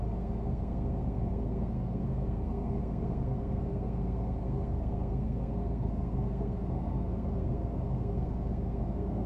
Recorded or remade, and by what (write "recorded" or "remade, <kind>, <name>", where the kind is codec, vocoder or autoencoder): remade, codec, SNAC